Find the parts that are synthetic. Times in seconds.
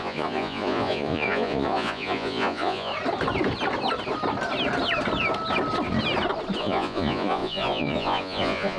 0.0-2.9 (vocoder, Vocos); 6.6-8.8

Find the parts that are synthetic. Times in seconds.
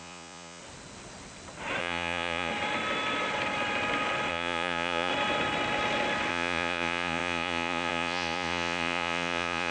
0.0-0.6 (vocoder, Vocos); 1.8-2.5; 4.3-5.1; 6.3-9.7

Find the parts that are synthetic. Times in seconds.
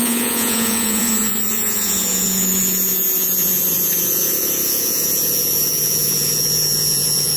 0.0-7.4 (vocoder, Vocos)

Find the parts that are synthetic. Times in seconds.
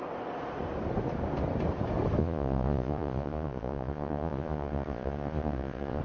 2.2-6.0 (vocoder, Vocos)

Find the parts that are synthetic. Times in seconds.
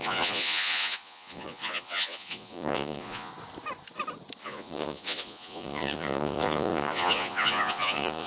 0.0-3.3 (vocoder, Vocos); 4.4-8.3